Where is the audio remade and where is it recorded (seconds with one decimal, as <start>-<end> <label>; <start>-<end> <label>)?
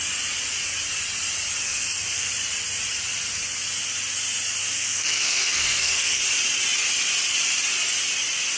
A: 0.0-1.6 recorded; 1.6-2.3 remade; 2.3-4.6 recorded; 4.6-6.2 remade; 6.2-8.6 recorded